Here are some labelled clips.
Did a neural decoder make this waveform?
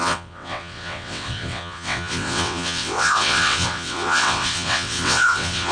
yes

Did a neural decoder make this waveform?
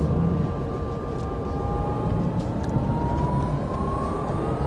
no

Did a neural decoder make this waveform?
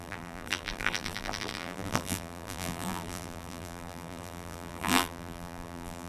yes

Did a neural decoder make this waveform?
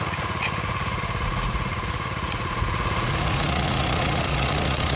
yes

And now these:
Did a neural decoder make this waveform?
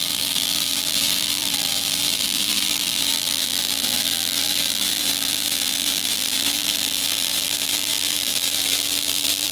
yes